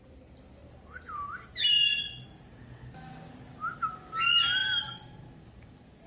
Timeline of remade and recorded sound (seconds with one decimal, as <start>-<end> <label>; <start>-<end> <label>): 0.0-0.6 recorded; 0.6-2.0 remade; 2.0-4.6 recorded; 4.6-5.2 remade; 5.2-6.1 recorded